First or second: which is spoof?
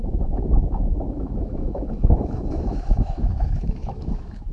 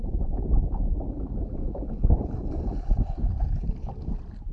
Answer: first